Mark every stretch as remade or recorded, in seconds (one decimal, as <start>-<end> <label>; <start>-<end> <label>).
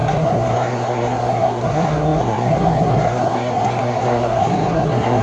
0.0-5.2 remade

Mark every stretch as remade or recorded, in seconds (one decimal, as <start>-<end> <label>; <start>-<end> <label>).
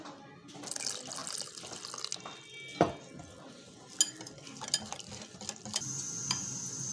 0.0-6.9 recorded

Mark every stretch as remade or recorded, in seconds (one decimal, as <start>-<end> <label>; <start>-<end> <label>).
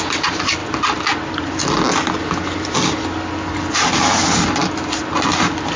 0.0-5.8 recorded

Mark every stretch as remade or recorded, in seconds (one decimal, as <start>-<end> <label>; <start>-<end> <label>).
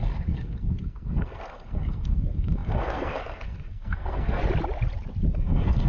0.0-4.4 remade; 4.4-5.3 recorded; 5.3-5.9 remade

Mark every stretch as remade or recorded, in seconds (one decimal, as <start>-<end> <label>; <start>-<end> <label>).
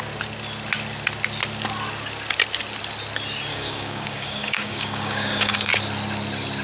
0.0-3.5 recorded; 3.5-5.7 remade; 5.7-6.6 recorded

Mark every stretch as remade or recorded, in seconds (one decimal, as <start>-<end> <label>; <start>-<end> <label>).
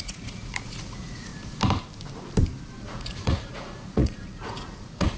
0.0-1.3 remade; 1.3-2.8 recorded; 2.8-5.2 remade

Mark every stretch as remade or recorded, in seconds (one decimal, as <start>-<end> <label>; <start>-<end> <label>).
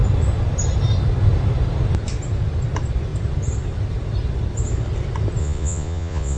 0.0-5.4 recorded; 5.4-6.4 remade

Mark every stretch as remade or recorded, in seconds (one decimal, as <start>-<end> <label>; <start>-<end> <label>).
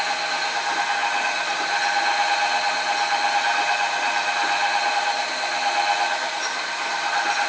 0.0-7.5 recorded